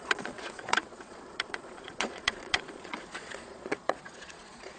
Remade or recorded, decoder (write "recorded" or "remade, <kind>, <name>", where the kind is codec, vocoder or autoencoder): remade, vocoder, Vocos